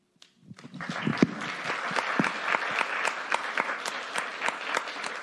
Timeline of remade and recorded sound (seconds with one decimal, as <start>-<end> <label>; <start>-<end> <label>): 0.0-5.2 recorded